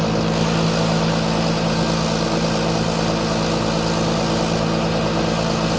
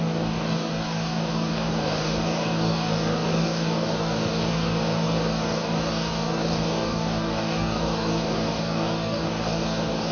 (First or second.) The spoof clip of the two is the second